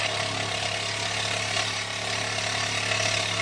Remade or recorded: recorded